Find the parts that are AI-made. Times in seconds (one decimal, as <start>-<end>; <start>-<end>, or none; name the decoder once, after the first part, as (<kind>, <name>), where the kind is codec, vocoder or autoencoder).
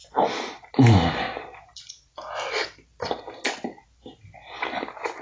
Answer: none